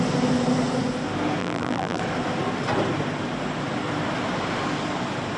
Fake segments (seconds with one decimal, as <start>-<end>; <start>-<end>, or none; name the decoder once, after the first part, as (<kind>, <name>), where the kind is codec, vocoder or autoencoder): 1.4-2.0 (vocoder, BigVGAN v2)